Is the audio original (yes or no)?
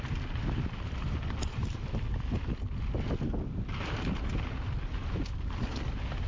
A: yes